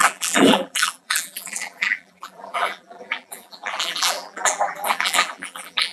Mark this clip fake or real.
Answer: fake